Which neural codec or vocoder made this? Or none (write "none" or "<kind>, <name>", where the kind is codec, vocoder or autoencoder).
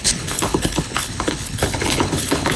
codec, HILCodec